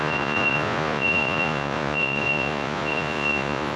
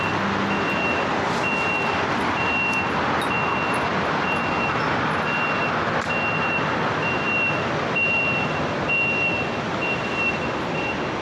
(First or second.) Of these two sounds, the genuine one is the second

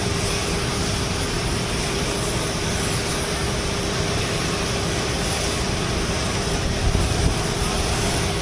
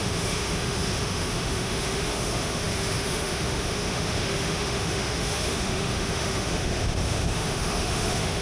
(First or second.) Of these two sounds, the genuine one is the first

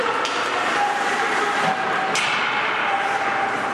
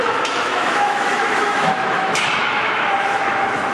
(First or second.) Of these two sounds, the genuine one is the first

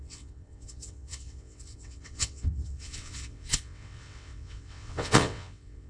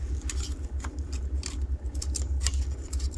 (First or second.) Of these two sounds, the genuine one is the second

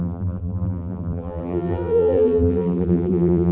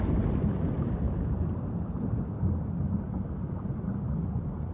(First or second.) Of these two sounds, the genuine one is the second